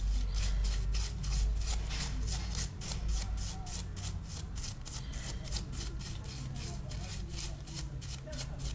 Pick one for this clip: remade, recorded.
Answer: recorded